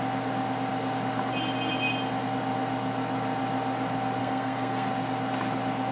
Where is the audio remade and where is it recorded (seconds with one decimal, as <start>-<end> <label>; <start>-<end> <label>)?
0.0-4.2 recorded; 4.2-4.9 remade; 4.9-5.9 recorded